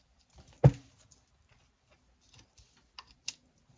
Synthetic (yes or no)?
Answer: no